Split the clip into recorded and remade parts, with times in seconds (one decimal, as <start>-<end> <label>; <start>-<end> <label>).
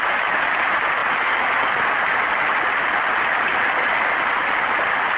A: 0.0-5.2 recorded